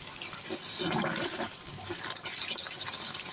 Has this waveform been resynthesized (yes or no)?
yes